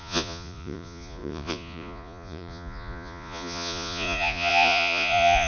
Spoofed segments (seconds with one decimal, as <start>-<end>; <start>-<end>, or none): 0.0-5.5